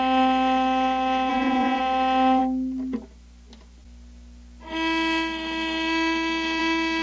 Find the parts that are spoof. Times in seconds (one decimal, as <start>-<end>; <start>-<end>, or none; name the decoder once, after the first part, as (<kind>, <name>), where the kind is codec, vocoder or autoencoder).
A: 1.3-1.8 (vocoder, Vocos)